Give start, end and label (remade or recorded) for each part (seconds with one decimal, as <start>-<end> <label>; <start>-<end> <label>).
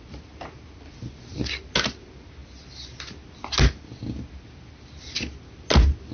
0.0-6.1 recorded